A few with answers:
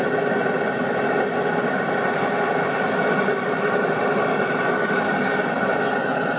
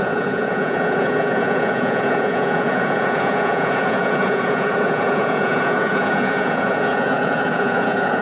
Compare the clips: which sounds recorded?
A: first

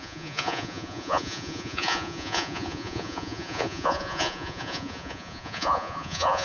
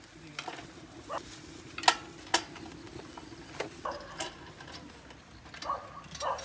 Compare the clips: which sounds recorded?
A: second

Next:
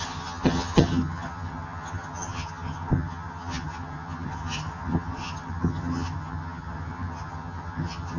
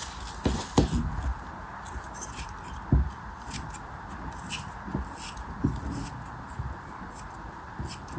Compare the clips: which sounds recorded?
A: second